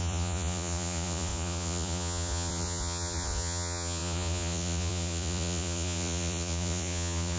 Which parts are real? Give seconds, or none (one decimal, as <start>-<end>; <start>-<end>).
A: none